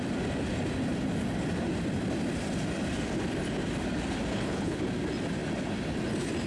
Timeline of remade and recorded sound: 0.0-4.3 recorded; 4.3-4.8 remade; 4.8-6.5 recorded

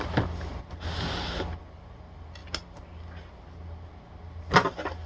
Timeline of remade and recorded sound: 0.0-5.1 recorded